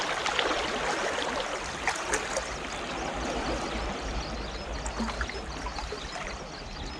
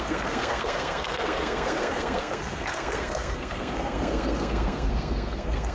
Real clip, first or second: first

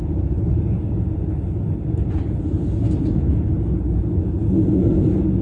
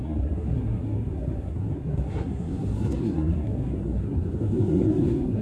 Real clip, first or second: first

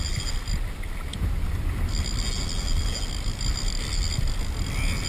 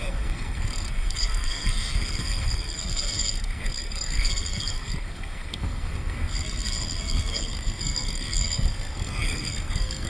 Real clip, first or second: first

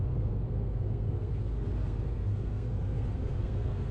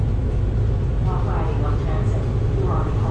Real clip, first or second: second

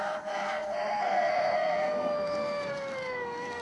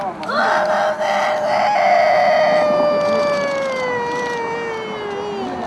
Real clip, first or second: second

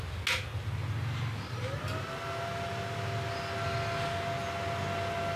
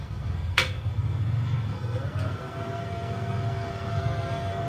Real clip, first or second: first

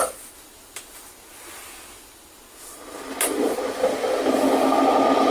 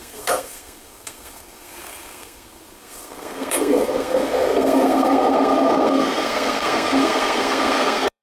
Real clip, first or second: first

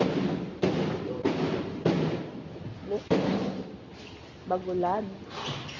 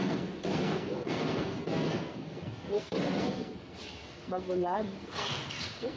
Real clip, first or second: first